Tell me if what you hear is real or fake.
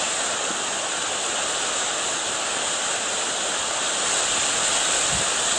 real